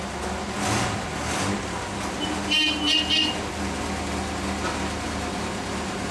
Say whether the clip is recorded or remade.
recorded